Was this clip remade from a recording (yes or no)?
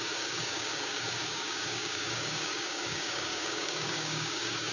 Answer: yes